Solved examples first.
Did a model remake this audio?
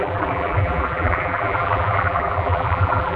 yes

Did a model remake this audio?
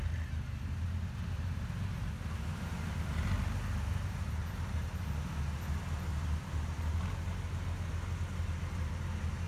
no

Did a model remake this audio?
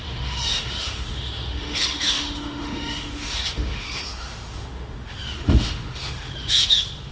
yes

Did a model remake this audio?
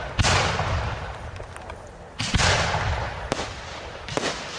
no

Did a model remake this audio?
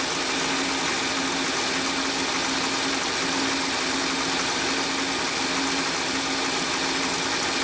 no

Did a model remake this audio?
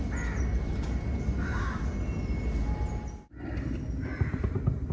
no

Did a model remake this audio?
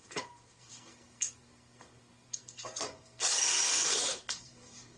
yes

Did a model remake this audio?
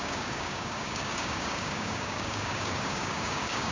yes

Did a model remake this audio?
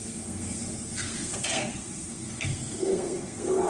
yes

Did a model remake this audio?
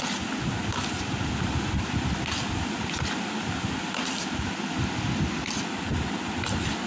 no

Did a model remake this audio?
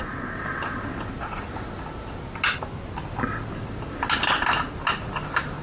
no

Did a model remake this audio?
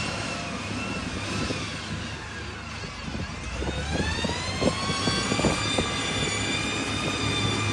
no